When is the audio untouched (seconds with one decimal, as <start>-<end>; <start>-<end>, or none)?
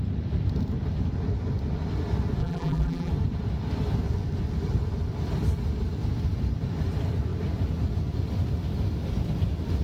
0.0-2.4; 3.1-9.8